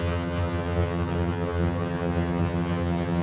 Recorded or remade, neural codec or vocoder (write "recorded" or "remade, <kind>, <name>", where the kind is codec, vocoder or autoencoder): remade, vocoder, HiFi-GAN